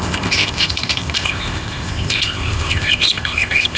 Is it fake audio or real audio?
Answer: fake